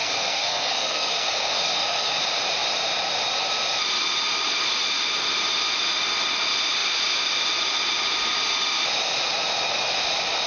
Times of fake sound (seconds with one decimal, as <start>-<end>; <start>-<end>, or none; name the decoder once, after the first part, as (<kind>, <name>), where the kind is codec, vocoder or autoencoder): 0.0-2.2 (codec, SNAC)